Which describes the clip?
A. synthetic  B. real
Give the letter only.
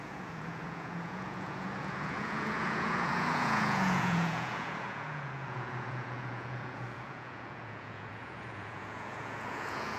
A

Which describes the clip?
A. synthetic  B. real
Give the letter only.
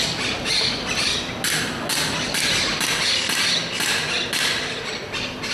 B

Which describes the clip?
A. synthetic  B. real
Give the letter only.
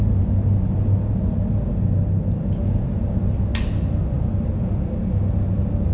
B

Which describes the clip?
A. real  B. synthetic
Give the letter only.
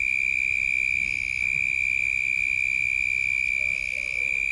B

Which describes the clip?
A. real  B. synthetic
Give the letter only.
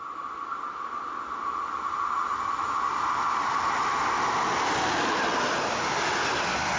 A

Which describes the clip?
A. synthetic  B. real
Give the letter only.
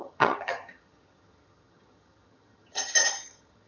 A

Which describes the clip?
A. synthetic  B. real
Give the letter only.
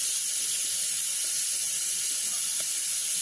B